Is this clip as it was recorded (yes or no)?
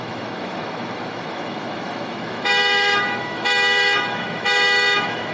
no